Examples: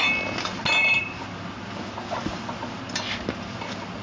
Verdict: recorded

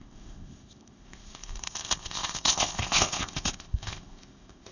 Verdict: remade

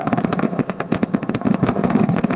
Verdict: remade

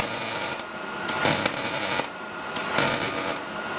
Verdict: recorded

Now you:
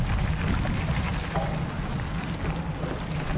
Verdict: recorded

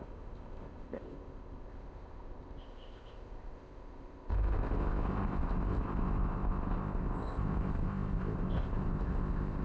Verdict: remade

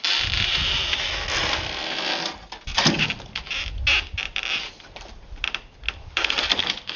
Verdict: recorded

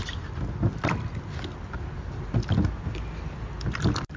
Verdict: recorded